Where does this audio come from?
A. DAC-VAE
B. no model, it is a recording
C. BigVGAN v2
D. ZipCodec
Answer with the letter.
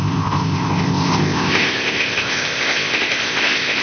D